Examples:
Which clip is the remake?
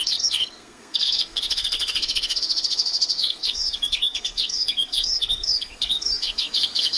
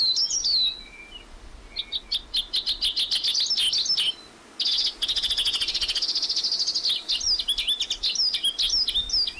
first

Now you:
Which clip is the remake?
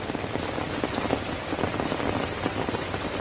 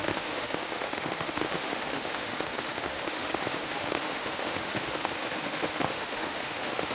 second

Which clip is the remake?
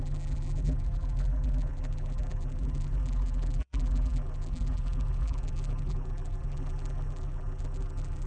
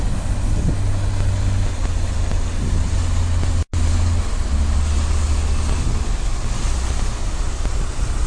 first